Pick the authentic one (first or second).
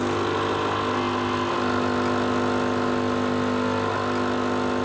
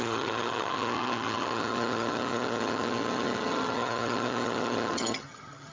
first